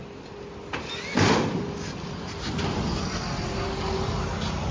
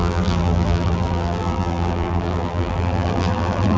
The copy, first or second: second